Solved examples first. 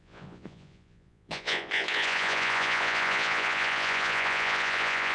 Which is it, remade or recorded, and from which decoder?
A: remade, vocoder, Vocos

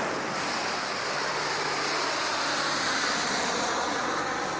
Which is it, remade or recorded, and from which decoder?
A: recorded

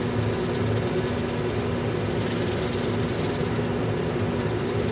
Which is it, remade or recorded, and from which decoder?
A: recorded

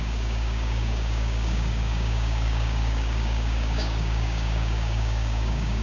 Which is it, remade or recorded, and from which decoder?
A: remade, codec, DAC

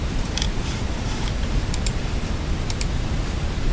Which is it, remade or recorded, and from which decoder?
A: remade, vocoder, BigVGAN v2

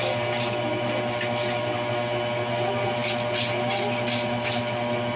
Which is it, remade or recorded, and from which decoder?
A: recorded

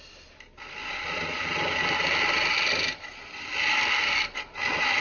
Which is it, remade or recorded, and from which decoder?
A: recorded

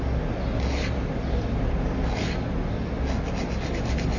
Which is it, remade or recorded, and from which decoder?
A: recorded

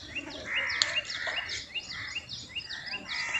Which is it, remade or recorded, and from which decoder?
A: recorded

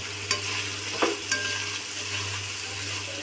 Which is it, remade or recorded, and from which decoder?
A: recorded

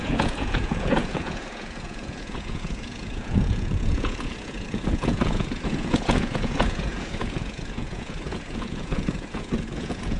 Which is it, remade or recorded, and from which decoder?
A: remade, vocoder, Vocos